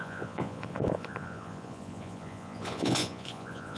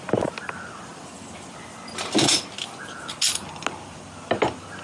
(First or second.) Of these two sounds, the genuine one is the second